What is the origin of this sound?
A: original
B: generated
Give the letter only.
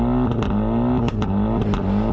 A